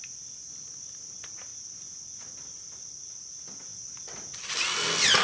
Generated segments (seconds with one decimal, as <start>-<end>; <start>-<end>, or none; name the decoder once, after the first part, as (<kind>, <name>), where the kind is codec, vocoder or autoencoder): none